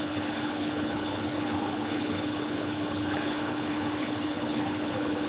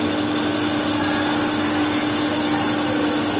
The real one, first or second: second